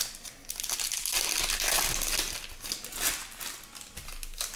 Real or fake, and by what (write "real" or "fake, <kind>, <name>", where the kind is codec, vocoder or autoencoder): real